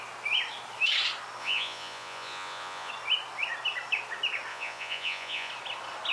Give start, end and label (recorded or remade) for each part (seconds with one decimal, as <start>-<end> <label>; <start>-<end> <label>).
0.0-1.4 recorded; 1.4-2.9 remade; 2.9-4.5 recorded; 4.5-5.5 remade; 5.5-6.1 recorded